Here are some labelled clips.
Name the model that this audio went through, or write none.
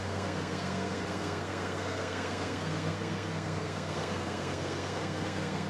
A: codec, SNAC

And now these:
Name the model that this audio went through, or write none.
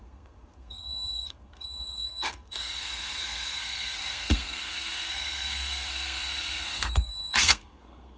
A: codec, SNAC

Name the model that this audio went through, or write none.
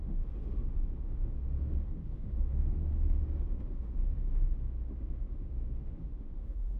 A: autoencoder, DAC-VAE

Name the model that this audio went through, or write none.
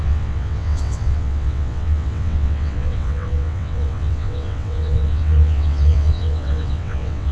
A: vocoder, WaveNeXt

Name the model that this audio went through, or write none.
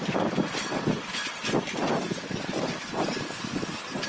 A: none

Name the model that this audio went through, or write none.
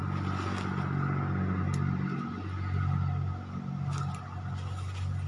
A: none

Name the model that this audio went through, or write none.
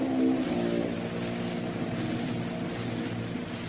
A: none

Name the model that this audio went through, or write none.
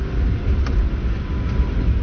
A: none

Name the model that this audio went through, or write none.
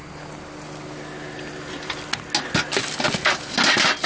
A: none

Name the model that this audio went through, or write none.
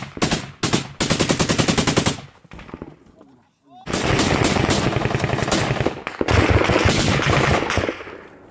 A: none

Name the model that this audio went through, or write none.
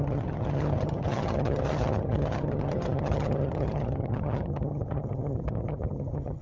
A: vocoder, HiFi-GAN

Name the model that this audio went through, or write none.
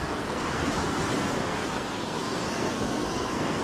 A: codec, SNAC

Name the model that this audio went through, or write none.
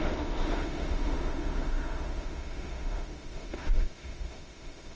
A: autoencoder, DAC-VAE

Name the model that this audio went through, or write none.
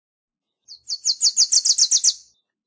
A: none